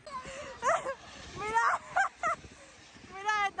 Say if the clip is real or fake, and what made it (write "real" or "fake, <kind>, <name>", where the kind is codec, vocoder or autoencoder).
real